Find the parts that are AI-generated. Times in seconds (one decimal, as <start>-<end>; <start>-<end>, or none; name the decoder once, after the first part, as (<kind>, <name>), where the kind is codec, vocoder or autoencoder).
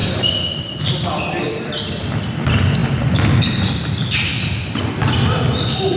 0.0-6.0 (vocoder, BigVGAN v2)